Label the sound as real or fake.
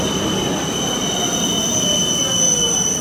real